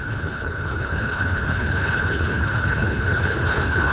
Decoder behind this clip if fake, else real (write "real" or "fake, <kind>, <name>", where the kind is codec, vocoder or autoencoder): fake, codec, HILCodec